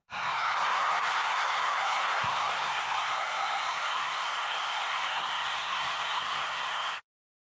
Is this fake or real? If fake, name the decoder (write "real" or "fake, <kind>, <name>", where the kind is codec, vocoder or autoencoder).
fake, codec, SNAC